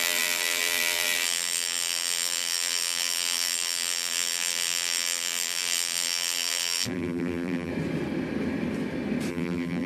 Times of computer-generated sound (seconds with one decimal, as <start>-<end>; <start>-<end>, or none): 0.0-7.7; 9.3-9.9